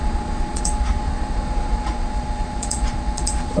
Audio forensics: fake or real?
fake